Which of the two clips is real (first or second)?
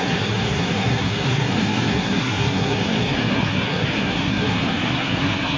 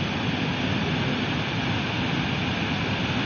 second